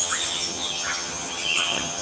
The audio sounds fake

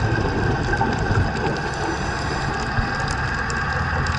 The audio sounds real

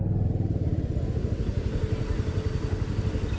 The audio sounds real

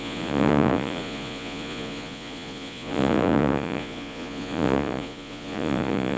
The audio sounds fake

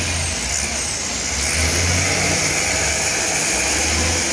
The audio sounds real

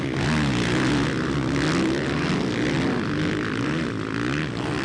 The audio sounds real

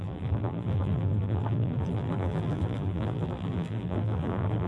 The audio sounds fake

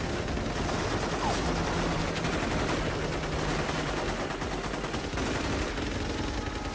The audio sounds real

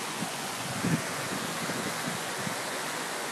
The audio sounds fake